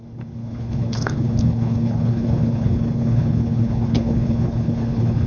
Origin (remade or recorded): remade